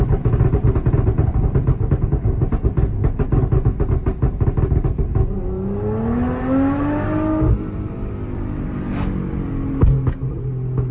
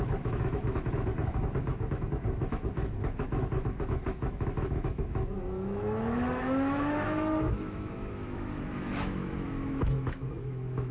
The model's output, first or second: second